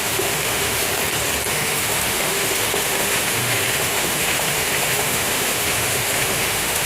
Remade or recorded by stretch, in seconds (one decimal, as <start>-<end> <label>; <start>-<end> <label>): 0.0-0.9 remade; 0.9-1.5 recorded; 1.5-6.9 remade